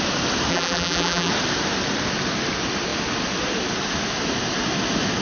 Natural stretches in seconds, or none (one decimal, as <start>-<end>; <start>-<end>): 0.0-0.5; 1.3-5.2